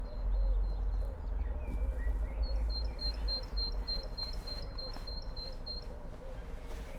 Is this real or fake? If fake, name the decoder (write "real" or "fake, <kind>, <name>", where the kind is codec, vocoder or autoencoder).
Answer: real